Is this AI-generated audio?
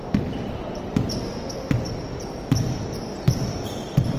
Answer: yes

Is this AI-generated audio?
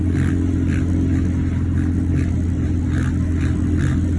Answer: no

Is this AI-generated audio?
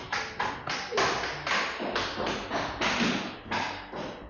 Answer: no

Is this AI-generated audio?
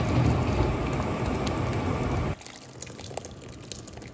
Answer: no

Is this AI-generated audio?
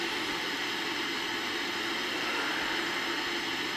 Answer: no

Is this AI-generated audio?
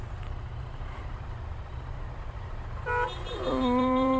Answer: yes